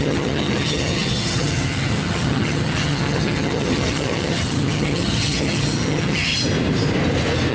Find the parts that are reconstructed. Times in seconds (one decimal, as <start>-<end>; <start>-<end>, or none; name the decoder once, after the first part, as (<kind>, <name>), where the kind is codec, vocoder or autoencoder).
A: 0.0-6.3 (vocoder, HiFi-GAN)